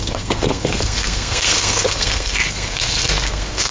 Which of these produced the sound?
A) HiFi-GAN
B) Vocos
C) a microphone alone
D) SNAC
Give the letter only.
D